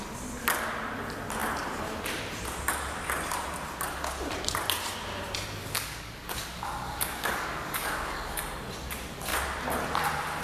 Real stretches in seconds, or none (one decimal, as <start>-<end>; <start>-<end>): 0.0-5.6; 8.4-10.4